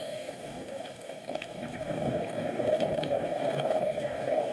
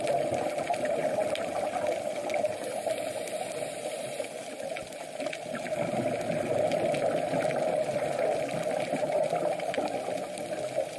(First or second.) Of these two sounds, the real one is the second